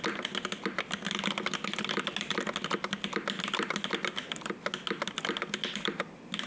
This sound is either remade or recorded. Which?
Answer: recorded